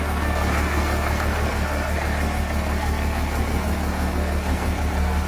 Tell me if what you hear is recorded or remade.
remade